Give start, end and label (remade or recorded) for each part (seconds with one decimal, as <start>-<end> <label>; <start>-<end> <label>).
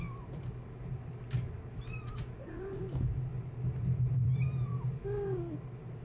0.0-0.6 remade; 0.6-2.1 recorded; 2.1-3.3 remade; 3.3-6.0 recorded